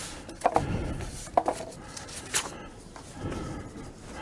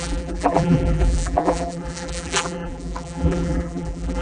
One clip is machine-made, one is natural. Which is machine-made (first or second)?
second